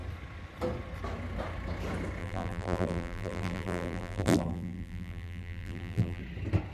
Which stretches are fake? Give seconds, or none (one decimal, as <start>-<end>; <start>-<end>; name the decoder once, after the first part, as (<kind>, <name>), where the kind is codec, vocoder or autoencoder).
2.2-6.2 (vocoder, BigVGAN v2)